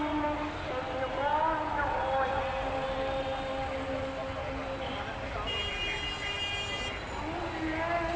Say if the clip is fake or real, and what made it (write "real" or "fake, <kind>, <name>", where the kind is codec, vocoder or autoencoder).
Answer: real